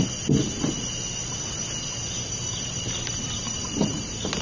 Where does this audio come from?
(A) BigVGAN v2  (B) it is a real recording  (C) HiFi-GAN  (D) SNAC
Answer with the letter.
B